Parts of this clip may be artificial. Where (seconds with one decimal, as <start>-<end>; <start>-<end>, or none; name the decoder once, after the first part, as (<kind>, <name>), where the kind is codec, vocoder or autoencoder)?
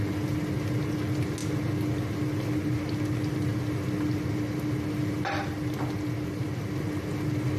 none